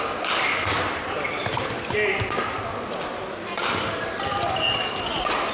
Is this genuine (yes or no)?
yes